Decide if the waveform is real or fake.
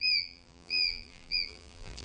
fake